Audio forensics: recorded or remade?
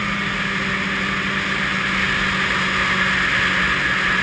recorded